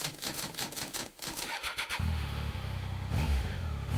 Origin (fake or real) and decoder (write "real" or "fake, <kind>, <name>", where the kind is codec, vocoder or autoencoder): fake, autoencoder, DAC-VAE